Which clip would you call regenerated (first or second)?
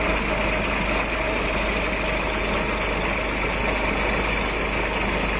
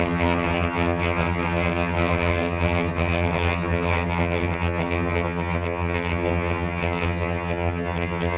second